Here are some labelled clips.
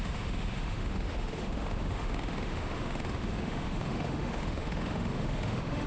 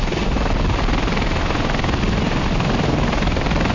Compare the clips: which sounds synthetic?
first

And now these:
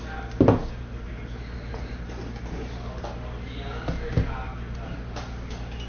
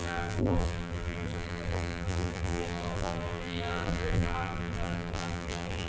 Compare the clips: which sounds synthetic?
second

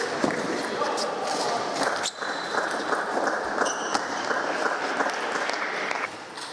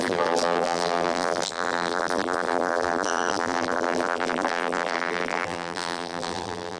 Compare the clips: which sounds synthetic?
second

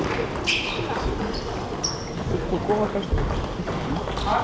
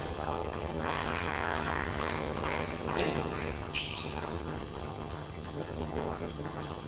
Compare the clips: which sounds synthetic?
second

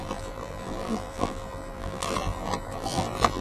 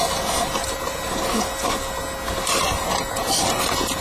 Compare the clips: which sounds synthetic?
first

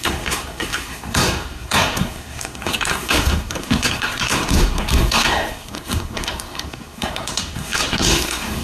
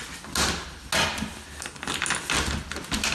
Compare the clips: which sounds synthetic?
first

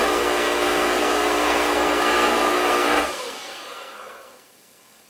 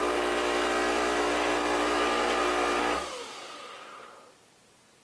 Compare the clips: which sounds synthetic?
first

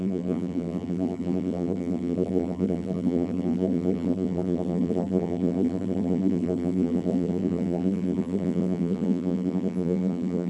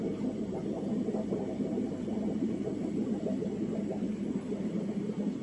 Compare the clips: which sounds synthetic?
first